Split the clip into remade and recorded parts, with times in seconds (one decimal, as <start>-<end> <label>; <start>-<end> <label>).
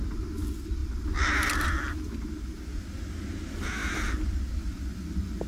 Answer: 0.0-5.5 recorded